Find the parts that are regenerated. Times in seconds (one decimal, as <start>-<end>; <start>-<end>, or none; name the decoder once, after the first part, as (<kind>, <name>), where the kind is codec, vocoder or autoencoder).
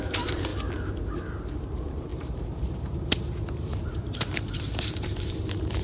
0.0-0.5 (vocoder, BigVGAN v2); 1.2-5.8